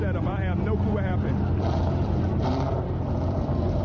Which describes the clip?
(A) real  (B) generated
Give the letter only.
B